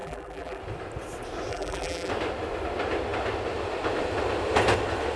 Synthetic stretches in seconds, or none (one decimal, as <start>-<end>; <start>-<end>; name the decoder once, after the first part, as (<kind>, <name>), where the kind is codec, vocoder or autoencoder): 0.0-0.6 (vocoder, BigVGAN v2); 1.5-2.1